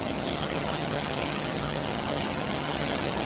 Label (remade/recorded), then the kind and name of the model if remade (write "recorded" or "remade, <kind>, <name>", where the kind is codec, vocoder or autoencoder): remade, vocoder, HiFi-GAN